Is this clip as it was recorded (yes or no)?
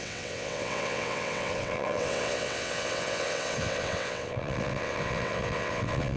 no